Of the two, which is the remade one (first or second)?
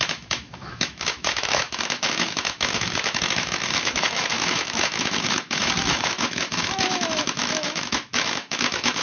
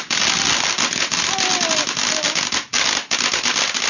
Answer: first